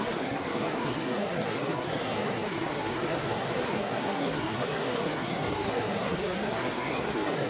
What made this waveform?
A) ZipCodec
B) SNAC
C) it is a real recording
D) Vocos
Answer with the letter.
B